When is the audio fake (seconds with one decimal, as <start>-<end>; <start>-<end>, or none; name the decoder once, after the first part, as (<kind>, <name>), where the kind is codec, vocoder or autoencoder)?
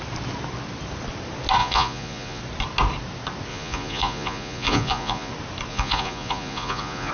1.6-2.4 (vocoder, Vocos); 3.5-5.3; 5.7-7.1